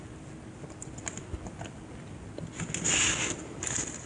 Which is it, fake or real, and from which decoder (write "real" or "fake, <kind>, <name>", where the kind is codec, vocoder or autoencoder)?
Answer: real